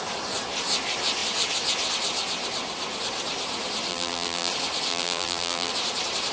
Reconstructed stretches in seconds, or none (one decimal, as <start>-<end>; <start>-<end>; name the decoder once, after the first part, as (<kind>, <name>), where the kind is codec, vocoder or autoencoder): 3.9-4.5 (vocoder, BigVGAN v2); 4.9-5.7